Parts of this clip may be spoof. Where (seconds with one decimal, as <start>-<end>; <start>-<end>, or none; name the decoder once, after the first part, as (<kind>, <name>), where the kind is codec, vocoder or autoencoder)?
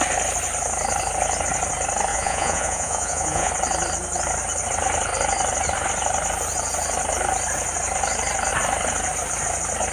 2.1-3.5 (vocoder, Vocos)